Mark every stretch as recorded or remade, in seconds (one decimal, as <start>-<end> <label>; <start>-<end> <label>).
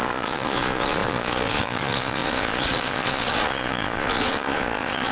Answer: 0.0-5.1 remade